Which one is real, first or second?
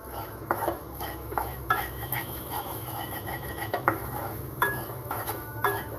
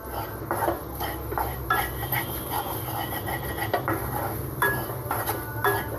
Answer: second